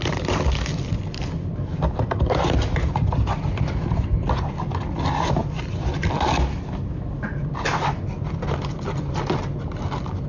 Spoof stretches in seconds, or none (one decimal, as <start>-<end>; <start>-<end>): none